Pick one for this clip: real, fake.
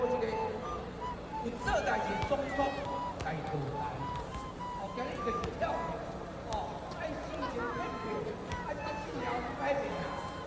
real